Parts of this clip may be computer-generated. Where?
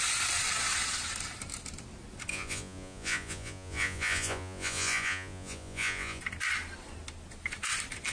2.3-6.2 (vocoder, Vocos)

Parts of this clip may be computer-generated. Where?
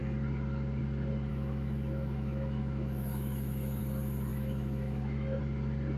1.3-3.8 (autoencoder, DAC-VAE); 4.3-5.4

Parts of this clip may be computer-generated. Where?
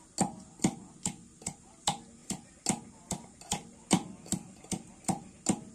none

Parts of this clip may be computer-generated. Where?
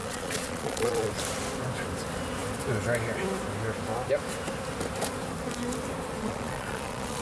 0.0-1.2 (vocoder, Vocos); 6.2-7.2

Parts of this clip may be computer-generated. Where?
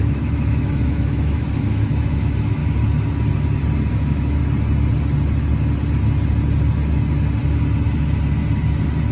0.0-2.6 (autoencoder, DAC-VAE); 3.9-4.4